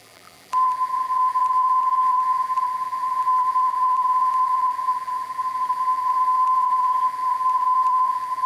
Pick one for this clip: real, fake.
fake